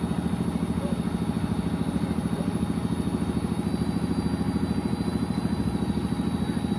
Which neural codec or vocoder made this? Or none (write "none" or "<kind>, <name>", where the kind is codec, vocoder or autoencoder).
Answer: none